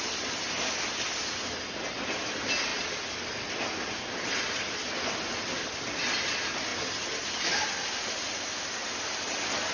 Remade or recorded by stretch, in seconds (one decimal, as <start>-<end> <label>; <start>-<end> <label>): 0.0-9.7 recorded